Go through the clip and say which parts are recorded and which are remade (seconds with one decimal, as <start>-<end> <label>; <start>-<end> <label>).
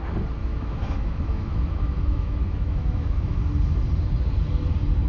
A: 0.0-0.4 recorded; 0.4-3.4 remade; 3.4-5.1 recorded